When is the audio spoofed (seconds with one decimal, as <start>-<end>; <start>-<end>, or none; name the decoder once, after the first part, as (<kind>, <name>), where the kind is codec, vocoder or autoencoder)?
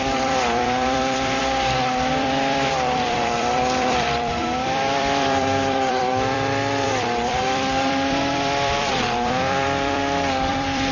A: 0.0-1.4 (vocoder, BigVGAN v2); 2.1-10.0; 10.5-10.9